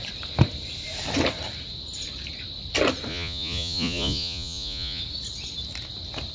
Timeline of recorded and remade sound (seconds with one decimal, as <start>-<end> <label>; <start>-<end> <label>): 0.0-3.1 recorded; 3.1-5.0 remade; 5.0-6.3 recorded